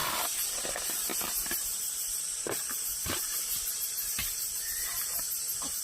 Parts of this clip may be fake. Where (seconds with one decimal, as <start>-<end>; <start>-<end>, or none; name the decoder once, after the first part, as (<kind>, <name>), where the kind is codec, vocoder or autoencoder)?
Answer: 0.0-0.7 (vocoder, BigVGAN v2)

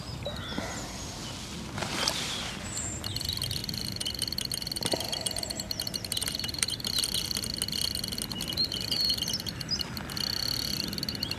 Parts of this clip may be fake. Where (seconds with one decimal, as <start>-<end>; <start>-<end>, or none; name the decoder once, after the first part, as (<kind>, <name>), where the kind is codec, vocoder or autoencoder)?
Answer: 3.6-6.8 (vocoder, BigVGAN v2)

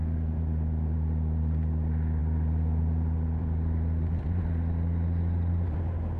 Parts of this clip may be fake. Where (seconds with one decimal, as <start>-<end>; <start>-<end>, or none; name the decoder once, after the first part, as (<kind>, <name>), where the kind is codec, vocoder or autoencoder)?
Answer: 2.2-4.2 (vocoder, BigVGAN v2)

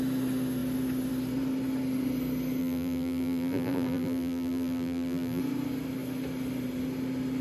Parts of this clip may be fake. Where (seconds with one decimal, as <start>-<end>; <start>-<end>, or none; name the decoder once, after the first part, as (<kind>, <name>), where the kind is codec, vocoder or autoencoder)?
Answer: 2.6-5.4 (vocoder, BigVGAN v2)